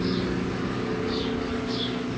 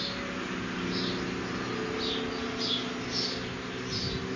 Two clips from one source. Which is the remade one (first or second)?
first